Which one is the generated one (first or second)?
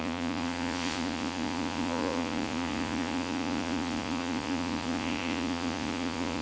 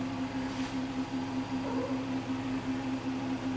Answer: first